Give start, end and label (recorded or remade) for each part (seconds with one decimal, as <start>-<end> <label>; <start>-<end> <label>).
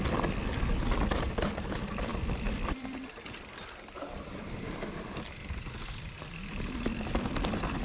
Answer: 0.0-2.1 recorded; 2.1-6.3 remade; 6.3-7.8 recorded